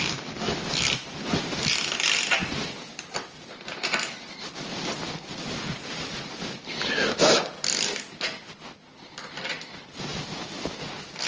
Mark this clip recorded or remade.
recorded